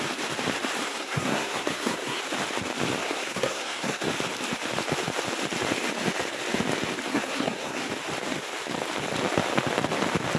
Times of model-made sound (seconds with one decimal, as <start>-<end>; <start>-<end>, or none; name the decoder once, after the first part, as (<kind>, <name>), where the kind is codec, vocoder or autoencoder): 0.8-2.2 (codec, SNAC); 3.0-4.1; 7.1-7.9